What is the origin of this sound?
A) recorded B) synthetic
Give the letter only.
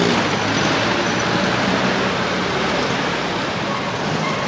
A